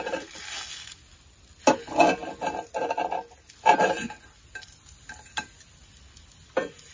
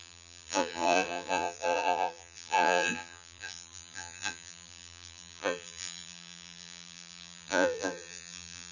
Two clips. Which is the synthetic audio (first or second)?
second